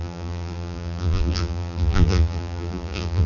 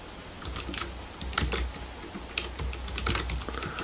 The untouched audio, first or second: second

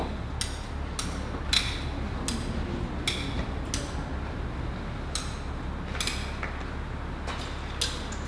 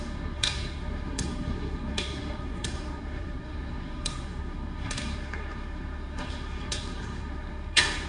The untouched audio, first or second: first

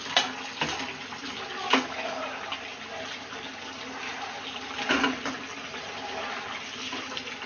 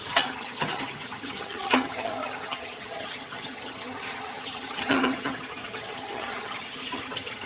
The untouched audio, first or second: first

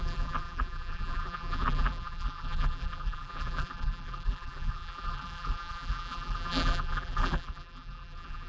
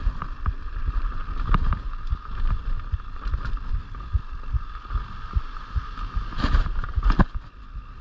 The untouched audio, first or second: second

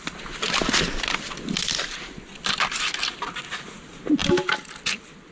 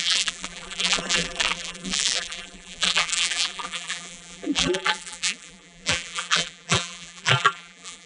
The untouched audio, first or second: first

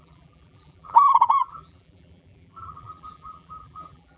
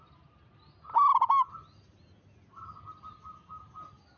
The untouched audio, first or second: second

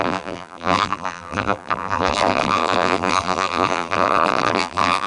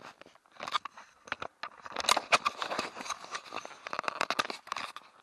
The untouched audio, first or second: second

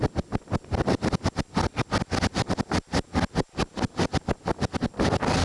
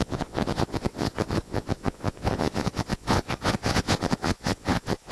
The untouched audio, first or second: first